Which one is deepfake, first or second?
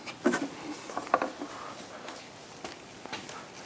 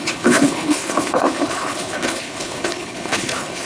second